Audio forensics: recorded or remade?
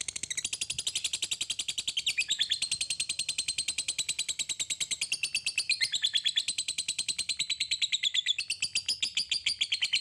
recorded